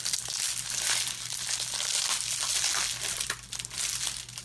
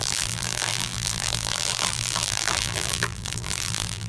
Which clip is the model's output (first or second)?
second